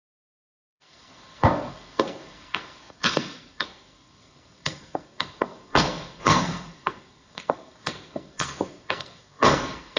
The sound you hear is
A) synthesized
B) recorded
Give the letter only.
A